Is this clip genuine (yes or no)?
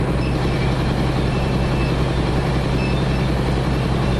yes